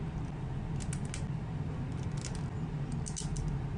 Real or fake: real